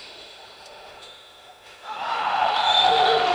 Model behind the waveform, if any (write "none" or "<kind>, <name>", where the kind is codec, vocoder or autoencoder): autoencoder, DAC-VAE